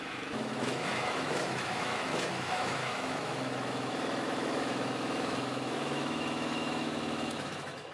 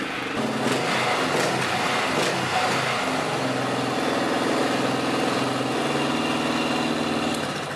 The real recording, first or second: second